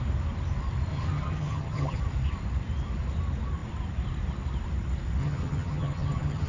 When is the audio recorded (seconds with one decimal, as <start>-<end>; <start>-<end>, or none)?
0.0-0.9; 2.0-5.2